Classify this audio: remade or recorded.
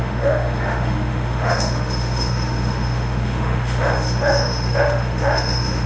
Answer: remade